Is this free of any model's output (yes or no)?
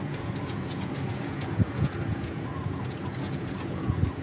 no